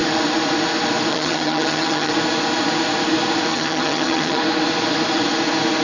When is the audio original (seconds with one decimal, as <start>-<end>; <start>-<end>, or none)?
0.0-1.1; 2.1-3.5; 4.4-5.8